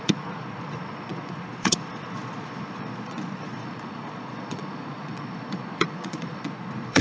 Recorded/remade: remade